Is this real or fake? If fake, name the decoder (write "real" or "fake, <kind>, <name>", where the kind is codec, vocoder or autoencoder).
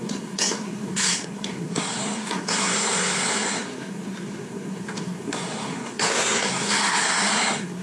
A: fake, codec, SNAC